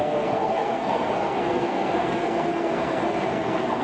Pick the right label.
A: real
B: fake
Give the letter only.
B